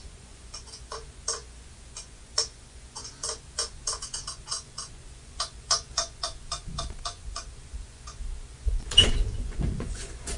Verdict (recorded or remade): remade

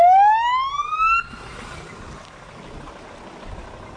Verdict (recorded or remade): recorded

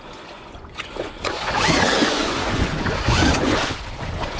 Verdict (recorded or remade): remade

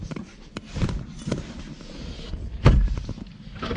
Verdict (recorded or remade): remade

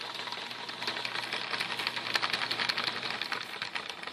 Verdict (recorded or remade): recorded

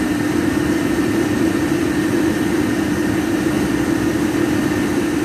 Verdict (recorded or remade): remade